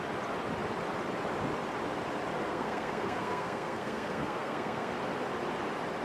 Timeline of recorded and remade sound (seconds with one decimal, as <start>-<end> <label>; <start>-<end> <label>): 0.0-2.5 recorded; 2.5-4.9 remade; 4.9-6.0 recorded